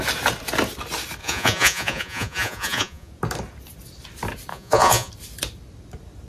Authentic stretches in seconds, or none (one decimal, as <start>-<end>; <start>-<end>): 0.0-1.2; 3.1-4.5; 5.1-6.3